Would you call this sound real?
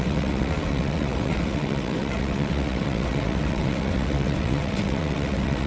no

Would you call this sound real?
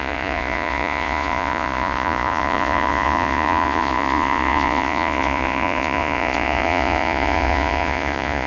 no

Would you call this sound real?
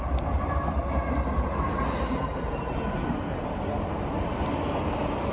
yes